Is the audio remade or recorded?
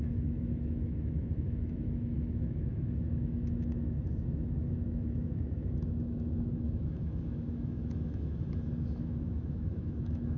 remade